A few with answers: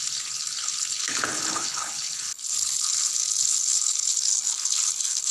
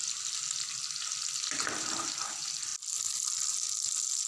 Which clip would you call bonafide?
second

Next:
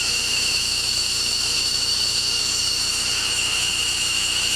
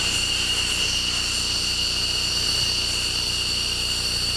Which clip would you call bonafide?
second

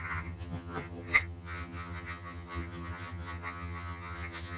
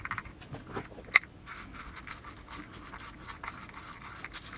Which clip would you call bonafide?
second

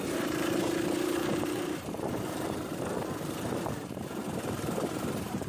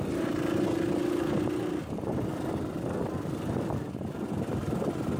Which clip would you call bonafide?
second